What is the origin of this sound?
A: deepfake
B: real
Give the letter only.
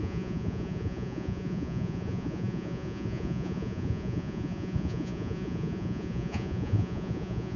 A